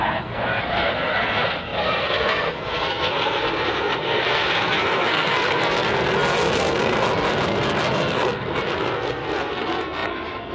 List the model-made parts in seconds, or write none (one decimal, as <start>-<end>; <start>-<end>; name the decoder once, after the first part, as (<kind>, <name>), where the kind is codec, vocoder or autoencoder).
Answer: 0.0-10.5 (codec, SNAC)